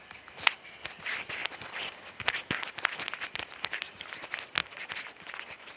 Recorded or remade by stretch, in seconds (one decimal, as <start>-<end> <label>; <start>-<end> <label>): 0.0-1.4 recorded; 1.4-2.5 remade; 2.5-4.6 recorded; 4.6-5.8 remade